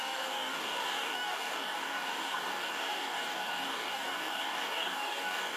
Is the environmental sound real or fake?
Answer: fake